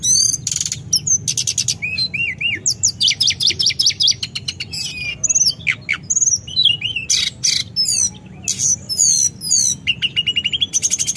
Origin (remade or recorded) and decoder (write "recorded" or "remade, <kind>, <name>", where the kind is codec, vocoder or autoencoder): recorded